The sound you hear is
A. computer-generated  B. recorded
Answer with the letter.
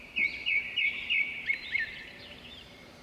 A